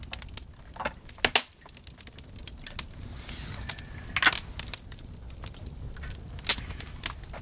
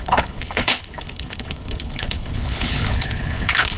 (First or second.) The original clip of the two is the first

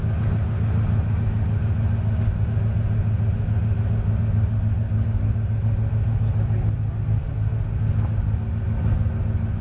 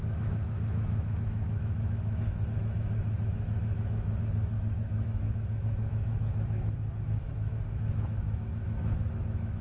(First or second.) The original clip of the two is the first